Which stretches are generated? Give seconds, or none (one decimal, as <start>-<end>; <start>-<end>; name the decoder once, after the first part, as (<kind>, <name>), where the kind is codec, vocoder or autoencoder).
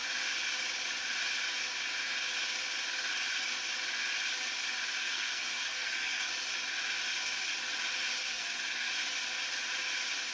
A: 5.0-6.3 (codec, SNAC); 8.2-8.9